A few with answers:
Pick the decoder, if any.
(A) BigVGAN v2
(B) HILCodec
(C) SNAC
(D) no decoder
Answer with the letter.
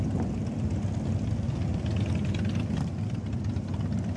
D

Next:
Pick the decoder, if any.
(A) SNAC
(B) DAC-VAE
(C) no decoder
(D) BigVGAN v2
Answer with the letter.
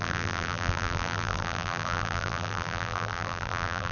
D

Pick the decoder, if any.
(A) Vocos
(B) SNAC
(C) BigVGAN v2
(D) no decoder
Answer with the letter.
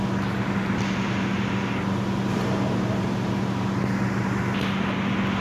D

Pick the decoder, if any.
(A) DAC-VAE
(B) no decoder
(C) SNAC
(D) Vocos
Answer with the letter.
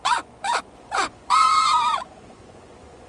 D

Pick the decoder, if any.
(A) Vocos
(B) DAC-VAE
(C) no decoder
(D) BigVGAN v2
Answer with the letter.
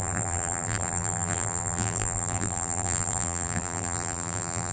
D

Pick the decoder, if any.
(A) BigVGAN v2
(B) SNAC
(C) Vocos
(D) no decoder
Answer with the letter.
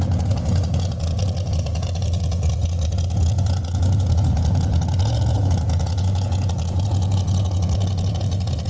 C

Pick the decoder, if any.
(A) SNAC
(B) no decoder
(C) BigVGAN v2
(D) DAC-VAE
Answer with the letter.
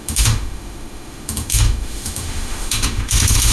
D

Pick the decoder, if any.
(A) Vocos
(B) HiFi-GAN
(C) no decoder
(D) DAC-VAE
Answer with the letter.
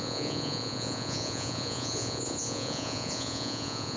A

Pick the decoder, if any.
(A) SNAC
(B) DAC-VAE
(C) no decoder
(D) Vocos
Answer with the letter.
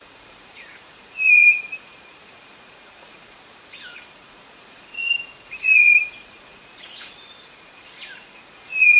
D